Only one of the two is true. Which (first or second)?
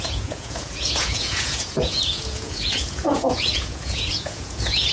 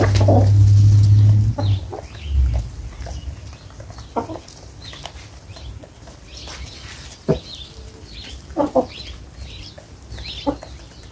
second